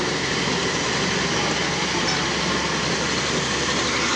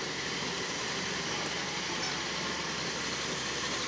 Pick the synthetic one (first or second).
second